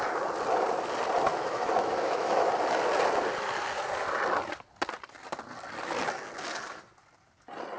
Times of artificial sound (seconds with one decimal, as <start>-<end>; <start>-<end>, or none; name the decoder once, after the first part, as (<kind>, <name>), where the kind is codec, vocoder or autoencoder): 1.3-2.5 (autoencoder, DAC-VAE)